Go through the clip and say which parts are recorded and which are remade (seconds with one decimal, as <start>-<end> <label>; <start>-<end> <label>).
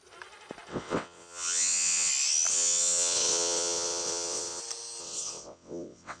0.0-0.7 recorded; 0.7-2.1 remade; 2.1-2.5 recorded; 2.5-4.6 remade; 4.6-5.0 recorded; 5.0-6.2 remade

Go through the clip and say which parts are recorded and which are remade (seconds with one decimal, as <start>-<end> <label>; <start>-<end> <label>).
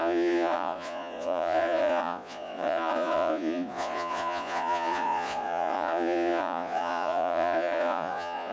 0.0-8.5 remade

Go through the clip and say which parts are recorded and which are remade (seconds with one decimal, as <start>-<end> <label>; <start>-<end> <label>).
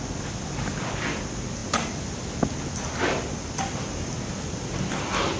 0.0-5.4 recorded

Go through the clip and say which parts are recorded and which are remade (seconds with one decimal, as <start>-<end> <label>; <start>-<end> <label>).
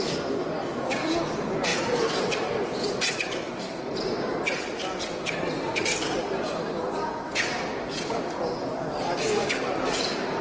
0.0-1.7 recorded; 1.7-3.5 remade; 3.5-4.8 recorded; 4.8-6.0 remade; 6.0-10.4 recorded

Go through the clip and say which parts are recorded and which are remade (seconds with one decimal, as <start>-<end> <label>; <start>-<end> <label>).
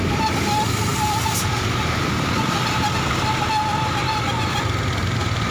0.0-0.9 recorded; 0.9-3.3 remade; 3.3-5.5 recorded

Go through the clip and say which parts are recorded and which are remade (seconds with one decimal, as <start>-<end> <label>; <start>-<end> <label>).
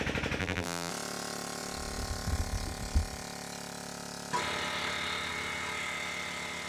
0.0-0.4 recorded; 0.4-0.9 remade; 0.9-6.7 recorded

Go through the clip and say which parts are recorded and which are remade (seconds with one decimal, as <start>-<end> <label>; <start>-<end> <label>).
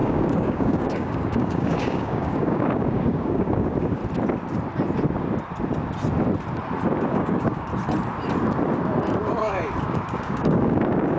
0.0-4.0 remade; 4.0-7.1 recorded; 7.1-7.7 remade; 7.7-9.8 recorded; 9.8-11.2 remade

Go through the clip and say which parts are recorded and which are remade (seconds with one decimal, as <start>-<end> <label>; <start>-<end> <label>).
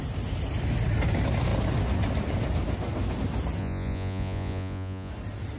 0.0-3.6 recorded; 3.6-5.1 remade; 5.1-5.6 recorded